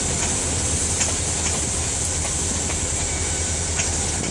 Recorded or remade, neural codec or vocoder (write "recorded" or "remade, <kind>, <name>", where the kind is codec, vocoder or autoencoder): remade, vocoder, BigVGAN v2